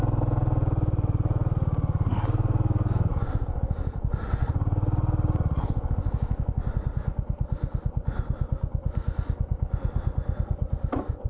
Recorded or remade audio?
recorded